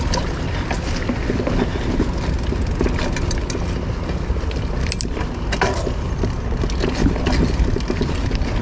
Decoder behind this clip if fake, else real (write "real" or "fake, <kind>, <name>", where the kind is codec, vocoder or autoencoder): real